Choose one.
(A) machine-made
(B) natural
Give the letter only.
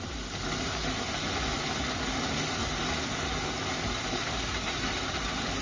B